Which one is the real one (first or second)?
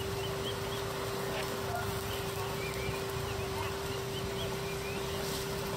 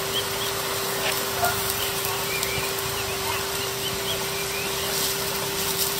first